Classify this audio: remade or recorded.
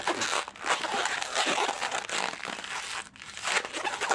recorded